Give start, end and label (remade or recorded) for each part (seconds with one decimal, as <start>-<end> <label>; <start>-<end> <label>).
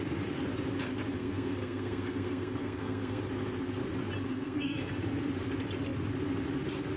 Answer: 0.0-1.2 recorded; 1.2-3.2 remade; 3.2-4.3 recorded; 4.3-5.0 remade; 5.0-7.0 recorded